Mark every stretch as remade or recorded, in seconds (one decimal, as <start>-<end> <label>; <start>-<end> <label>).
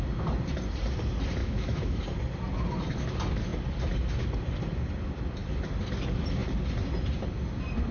0.0-1.4 recorded; 1.4-2.0 remade; 2.0-7.9 recorded